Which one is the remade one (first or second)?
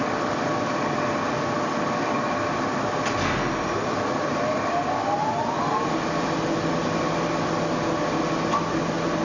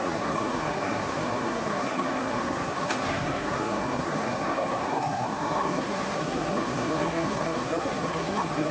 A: second